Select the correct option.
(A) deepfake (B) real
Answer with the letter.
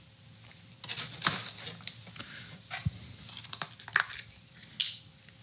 B